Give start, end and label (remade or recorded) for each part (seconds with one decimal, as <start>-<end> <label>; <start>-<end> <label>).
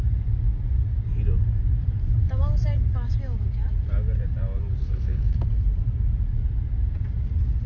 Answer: 0.0-4.8 recorded; 4.8-5.4 remade; 5.4-7.7 recorded